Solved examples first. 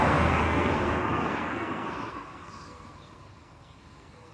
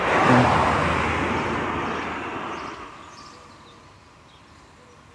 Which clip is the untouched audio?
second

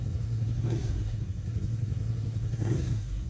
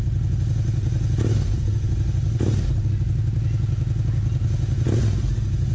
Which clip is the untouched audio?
second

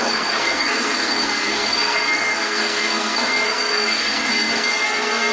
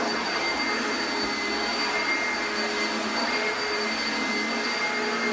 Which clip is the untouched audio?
second